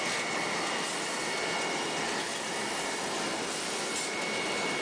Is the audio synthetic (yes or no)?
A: no